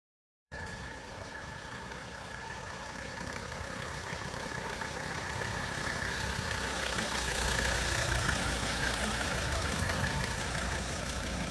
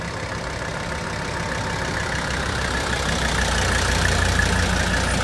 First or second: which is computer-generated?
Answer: first